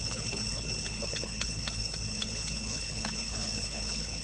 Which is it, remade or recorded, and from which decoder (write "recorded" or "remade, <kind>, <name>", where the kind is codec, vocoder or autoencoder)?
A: remade, codec, HILCodec